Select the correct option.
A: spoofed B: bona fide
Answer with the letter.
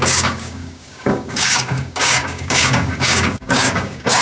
A